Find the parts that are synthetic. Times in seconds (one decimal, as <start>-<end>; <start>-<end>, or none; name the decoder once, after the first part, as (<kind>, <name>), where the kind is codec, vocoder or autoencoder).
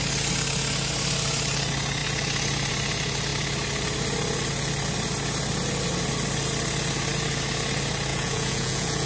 8.1-9.1 (vocoder, Vocos)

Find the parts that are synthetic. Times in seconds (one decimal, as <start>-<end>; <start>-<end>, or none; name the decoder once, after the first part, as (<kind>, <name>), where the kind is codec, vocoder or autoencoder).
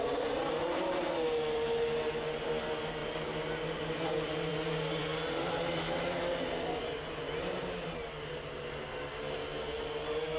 5.4-6.3 (autoencoder, DAC-VAE)